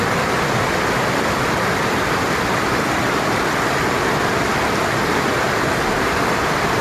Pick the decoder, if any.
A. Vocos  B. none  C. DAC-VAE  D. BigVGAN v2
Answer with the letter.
B